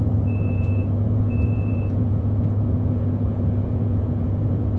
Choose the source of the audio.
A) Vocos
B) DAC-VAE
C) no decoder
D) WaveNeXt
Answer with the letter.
A